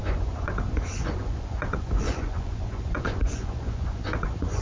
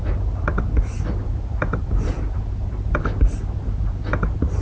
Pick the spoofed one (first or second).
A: first